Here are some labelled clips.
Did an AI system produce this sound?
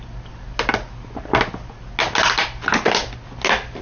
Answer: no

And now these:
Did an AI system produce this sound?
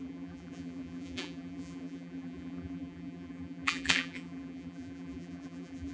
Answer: yes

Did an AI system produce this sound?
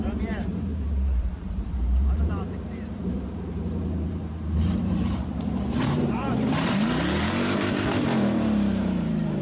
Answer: yes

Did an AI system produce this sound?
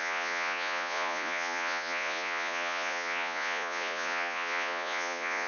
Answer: yes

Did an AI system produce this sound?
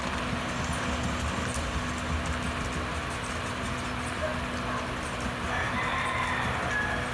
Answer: no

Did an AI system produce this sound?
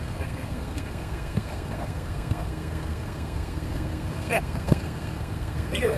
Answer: yes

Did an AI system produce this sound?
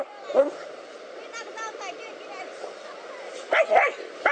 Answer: no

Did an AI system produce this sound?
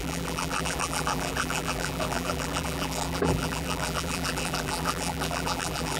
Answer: yes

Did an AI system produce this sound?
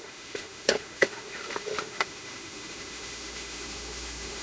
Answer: yes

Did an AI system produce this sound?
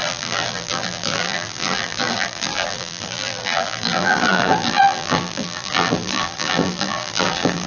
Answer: yes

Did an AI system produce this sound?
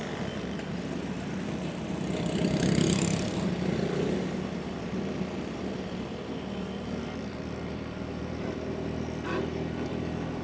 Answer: yes